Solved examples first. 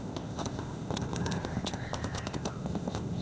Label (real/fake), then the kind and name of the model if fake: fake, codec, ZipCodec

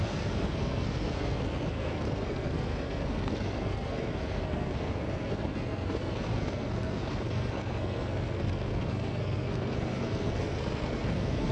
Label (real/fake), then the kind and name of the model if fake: fake, codec, SNAC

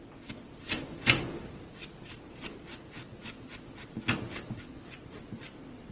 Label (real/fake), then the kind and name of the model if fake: real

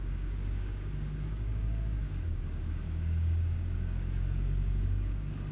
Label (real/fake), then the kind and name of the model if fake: fake, codec, DAC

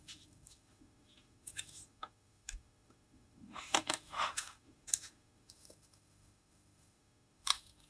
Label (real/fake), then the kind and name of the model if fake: fake, autoencoder, DAC-VAE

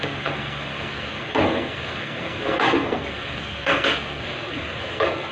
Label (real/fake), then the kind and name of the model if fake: fake, codec, SNAC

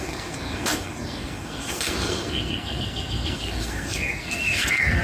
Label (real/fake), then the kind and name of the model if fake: fake, codec, SNAC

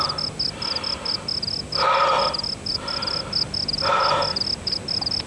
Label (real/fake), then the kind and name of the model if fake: real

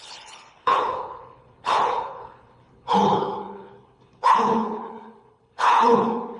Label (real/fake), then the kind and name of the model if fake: fake, codec, HILCodec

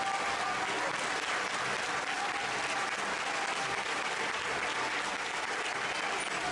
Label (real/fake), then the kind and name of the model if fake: real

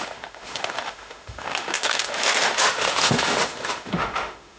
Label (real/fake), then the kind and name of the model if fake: fake, autoencoder, DAC-VAE